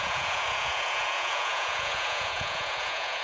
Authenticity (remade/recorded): remade